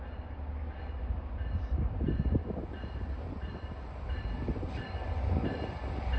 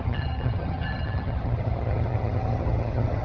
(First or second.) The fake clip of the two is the second